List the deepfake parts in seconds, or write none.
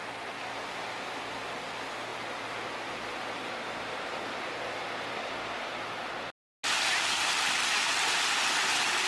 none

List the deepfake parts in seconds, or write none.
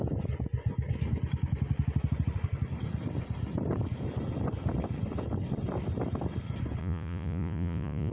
6.8-8.1 (vocoder, Vocos)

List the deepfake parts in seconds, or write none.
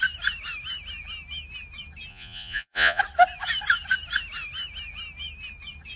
2.1-3.0 (vocoder, Vocos)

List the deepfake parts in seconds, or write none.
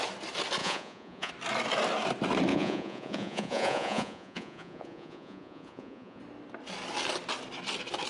0.6-1.3 (vocoder, Vocos); 2.5-6.2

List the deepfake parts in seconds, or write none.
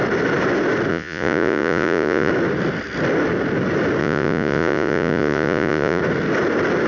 0.9-2.3 (vocoder, Vocos); 4.0-6.0